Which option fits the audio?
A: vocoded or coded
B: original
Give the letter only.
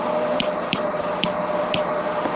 B